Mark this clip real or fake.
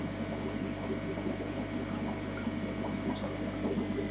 real